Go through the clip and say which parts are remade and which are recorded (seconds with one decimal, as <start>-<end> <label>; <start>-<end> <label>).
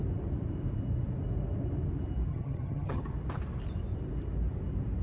0.0-2.3 recorded; 2.3-3.0 remade; 3.0-5.0 recorded